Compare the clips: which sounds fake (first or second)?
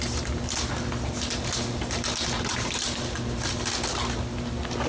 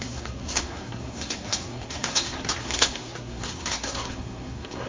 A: second